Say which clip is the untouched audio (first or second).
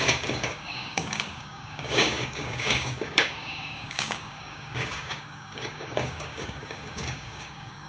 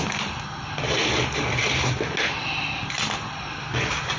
second